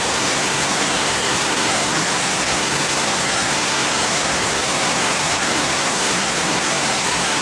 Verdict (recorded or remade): remade